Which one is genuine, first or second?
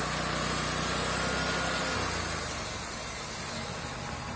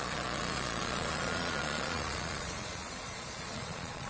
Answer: first